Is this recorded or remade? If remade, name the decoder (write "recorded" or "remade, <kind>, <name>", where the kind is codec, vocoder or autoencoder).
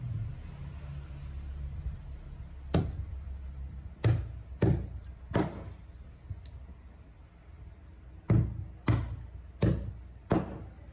recorded